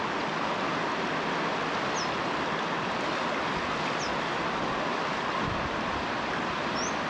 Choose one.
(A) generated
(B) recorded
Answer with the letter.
B